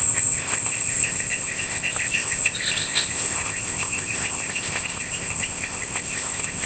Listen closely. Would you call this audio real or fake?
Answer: fake